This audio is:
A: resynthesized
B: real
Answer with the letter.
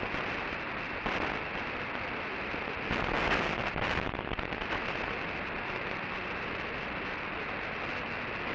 B